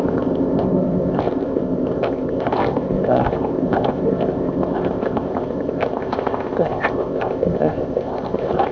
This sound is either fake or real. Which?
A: fake